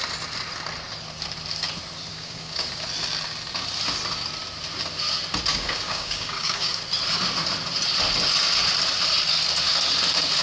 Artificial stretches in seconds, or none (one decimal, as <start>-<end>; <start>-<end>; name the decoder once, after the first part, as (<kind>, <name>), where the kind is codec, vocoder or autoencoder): 2.1-2.7 (codec, DAC); 5.5-6.8

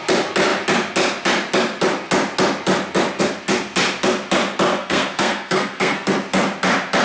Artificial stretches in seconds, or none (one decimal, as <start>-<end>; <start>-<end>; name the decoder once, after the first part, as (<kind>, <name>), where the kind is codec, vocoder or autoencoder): 4.7-6.1 (codec, SNAC)

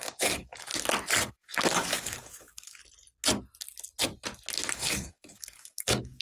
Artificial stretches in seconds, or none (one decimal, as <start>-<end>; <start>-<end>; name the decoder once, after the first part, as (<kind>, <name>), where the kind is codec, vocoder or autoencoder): 0.0-0.7 (codec, DAC); 1.3-2.8; 4.7-6.2

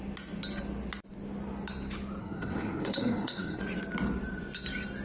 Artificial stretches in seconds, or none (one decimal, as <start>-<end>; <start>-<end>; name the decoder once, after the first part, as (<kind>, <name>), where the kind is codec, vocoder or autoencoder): 2.2-3.6 (codec, SNAC)

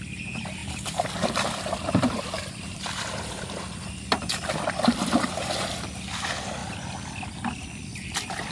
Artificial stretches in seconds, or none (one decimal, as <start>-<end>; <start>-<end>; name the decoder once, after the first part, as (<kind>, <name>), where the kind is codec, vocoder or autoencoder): 0.0-6.6 (vocoder, BigVGAN v2); 7.5-8.5

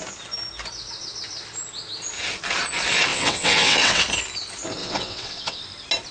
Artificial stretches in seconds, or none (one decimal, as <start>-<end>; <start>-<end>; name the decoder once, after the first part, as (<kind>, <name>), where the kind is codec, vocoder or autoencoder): 3.1-4.0 (vocoder, WaveNeXt); 4.8-5.6

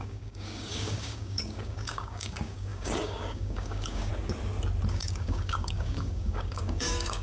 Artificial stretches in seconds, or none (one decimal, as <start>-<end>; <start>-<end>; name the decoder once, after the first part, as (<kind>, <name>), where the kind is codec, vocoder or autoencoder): 0.0-4.1 (codec, DAC); 4.9-7.2

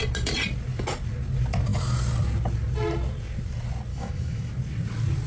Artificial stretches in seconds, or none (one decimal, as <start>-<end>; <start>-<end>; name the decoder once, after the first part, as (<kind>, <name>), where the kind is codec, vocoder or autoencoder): 3.9-4.5 (autoencoder, DAC-VAE)